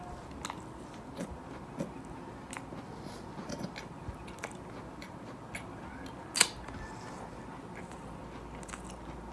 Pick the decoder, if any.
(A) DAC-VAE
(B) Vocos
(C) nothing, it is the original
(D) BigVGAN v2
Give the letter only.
C